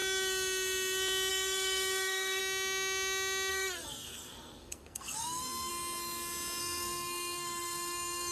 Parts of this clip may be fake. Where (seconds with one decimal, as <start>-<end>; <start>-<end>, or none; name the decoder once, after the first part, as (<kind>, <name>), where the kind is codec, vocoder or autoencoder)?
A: 1.3-2.4 (codec, SNAC); 3.5-5.7; 6.6-8.3